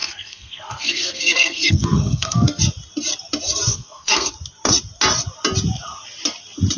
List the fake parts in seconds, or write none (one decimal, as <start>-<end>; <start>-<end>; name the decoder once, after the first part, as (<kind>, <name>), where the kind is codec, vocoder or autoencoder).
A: 0.0-2.6 (codec, SNAC); 3.7-4.3